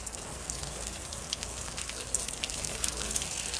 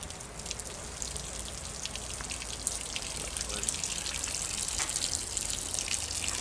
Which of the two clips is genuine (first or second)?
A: second